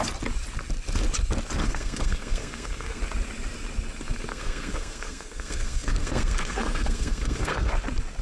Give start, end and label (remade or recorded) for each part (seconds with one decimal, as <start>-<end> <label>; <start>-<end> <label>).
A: 0.0-1.6 recorded; 1.6-3.0 remade; 3.0-4.3 recorded; 4.3-7.7 remade; 7.7-8.2 recorded